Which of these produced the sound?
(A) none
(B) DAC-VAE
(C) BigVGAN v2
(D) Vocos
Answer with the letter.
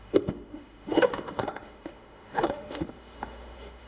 B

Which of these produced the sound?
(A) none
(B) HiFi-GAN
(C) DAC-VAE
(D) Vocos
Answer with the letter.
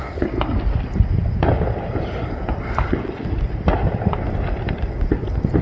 A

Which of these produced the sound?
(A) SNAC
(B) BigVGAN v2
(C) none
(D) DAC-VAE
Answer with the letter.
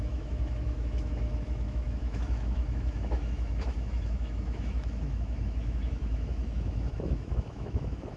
D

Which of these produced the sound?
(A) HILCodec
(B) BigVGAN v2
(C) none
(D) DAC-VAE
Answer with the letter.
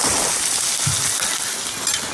C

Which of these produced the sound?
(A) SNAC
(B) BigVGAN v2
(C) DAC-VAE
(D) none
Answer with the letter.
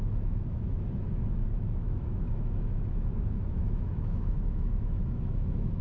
C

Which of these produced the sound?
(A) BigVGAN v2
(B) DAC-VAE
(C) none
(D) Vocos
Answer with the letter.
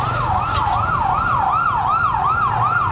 C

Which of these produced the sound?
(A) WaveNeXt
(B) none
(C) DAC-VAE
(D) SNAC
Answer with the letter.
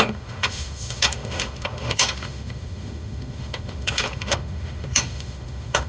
C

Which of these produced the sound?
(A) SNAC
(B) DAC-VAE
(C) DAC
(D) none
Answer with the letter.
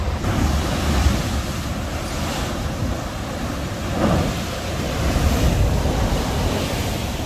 D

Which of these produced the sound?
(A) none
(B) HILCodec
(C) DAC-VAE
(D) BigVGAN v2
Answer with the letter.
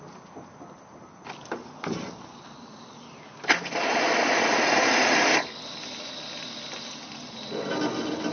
A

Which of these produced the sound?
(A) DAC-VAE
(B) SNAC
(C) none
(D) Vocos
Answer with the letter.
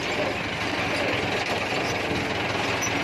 C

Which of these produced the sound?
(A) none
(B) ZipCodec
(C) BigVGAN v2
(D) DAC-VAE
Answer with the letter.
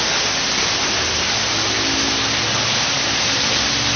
A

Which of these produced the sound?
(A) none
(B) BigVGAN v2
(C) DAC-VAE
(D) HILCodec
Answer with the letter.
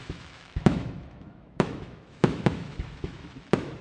C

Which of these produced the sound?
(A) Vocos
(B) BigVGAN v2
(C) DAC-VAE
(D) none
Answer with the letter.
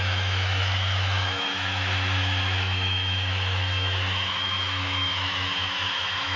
C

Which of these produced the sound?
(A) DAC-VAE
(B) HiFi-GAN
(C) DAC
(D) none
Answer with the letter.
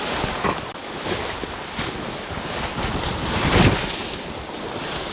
D